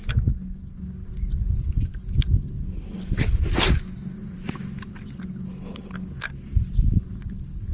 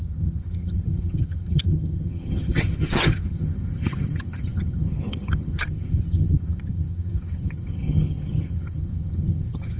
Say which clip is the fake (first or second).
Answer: second